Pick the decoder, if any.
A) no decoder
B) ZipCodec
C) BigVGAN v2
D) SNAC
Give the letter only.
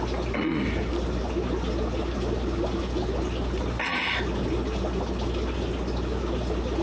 A